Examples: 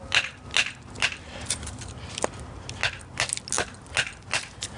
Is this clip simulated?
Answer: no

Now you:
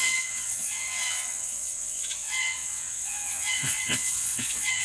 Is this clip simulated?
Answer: yes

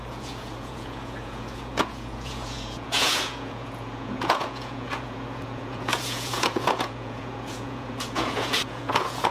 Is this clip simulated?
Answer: yes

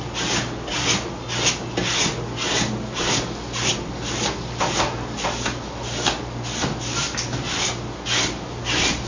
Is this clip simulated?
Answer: no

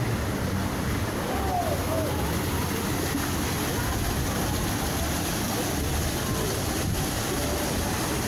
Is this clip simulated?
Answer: no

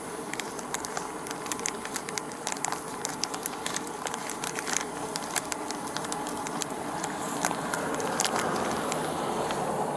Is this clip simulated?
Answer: yes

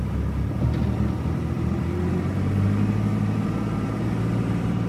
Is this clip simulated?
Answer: no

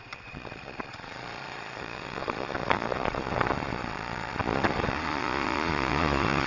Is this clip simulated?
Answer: yes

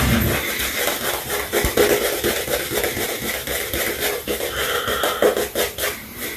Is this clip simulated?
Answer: no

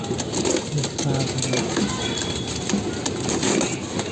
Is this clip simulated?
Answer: no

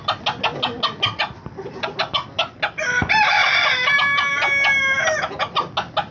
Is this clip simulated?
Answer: no